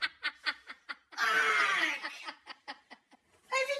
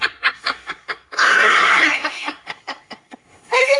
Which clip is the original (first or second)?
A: first